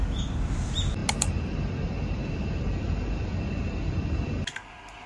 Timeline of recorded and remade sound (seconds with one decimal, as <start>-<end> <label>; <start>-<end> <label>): 0.0-5.1 recorded

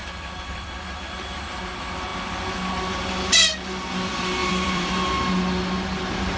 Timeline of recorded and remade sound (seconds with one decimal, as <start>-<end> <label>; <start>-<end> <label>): 0.0-1.6 remade; 1.6-4.4 recorded; 4.4-4.9 remade; 4.9-6.4 recorded

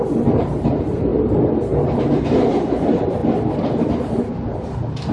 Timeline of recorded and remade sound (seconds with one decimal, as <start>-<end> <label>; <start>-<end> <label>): 0.0-1.1 remade; 1.1-2.0 recorded; 2.0-3.2 remade; 3.2-4.2 recorded; 4.2-5.1 remade

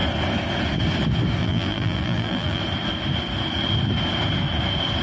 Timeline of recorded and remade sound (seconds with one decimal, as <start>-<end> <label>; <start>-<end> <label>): 0.0-1.4 recorded; 1.4-2.6 remade; 2.6-5.0 recorded

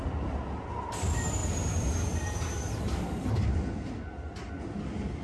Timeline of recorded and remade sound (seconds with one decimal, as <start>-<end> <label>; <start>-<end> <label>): 0.0-1.4 recorded; 1.4-4.5 remade; 4.5-5.2 recorded

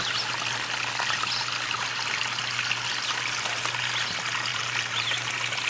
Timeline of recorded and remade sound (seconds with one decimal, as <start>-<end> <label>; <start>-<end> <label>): 0.0-4.5 recorded; 4.5-5.3 remade; 5.3-5.7 recorded

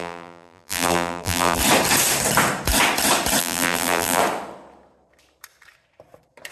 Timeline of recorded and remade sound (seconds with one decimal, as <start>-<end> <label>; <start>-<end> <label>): 0.0-1.6 remade; 1.6-3.4 recorded; 3.4-4.2 remade; 4.2-6.5 recorded

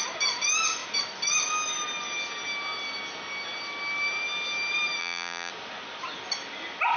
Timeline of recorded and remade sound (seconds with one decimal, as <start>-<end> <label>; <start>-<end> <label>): 0.0-5.0 recorded; 5.0-5.5 remade; 5.5-7.0 recorded